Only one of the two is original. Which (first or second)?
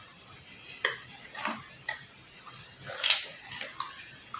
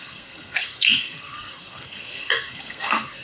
first